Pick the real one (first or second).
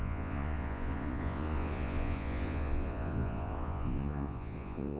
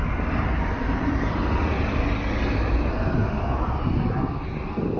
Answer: second